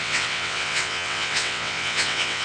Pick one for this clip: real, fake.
fake